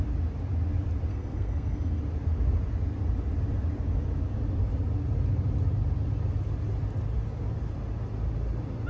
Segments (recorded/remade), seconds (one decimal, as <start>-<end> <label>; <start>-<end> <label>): 0.0-1.1 recorded; 1.1-2.0 remade; 2.0-8.9 recorded